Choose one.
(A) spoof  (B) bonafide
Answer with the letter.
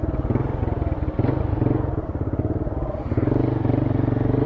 B